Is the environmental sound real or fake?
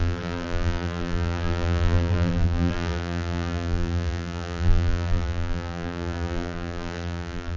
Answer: fake